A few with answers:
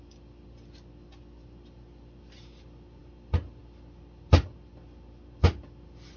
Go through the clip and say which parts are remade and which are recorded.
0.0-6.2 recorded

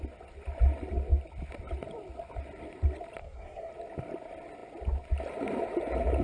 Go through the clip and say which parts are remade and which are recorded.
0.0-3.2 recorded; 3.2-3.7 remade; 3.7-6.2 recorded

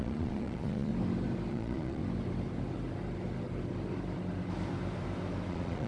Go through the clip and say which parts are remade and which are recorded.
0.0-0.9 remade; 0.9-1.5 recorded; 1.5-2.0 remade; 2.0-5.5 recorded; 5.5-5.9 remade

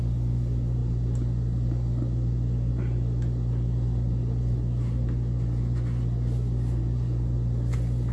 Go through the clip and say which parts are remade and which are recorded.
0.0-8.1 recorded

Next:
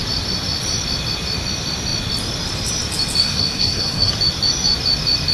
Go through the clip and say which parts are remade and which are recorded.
0.0-3.2 recorded; 3.2-4.1 remade; 4.1-5.3 recorded